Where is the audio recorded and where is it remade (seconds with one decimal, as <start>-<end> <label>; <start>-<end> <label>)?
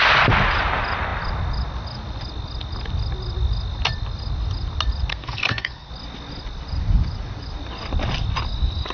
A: 0.0-5.1 recorded; 5.1-5.9 remade; 5.9-8.9 recorded